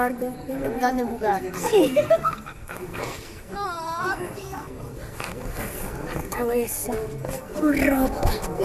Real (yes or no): no